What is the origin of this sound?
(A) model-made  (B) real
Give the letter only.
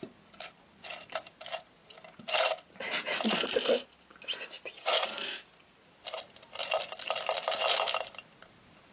B